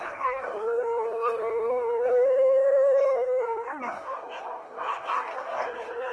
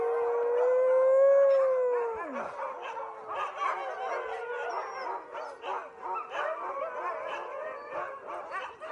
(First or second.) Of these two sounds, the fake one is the first